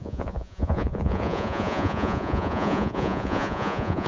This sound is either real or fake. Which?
fake